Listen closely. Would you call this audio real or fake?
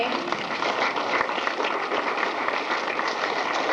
real